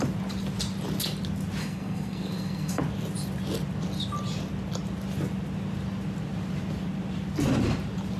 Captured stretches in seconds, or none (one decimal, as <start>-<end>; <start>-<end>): 0.0-1.6; 2.8-8.2